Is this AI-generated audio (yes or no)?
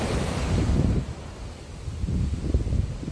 no